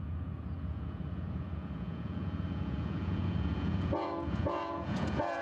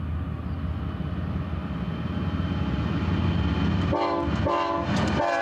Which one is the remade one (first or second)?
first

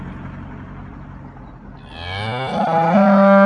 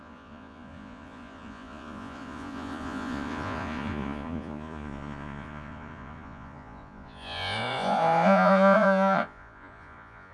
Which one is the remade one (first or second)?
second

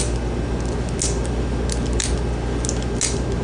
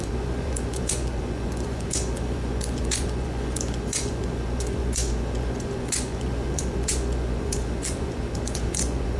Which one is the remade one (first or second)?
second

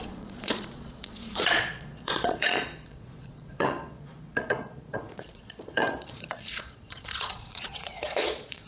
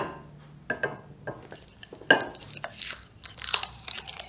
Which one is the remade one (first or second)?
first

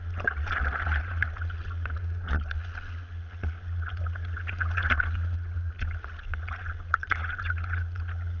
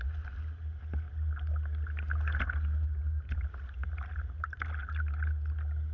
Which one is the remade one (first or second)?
first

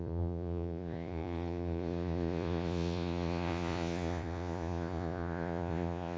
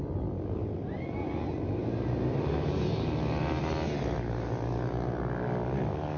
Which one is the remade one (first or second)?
first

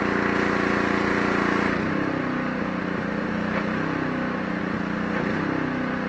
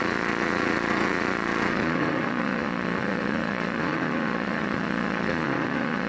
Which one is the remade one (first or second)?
second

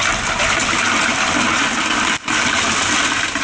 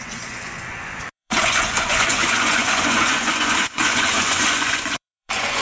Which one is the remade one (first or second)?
second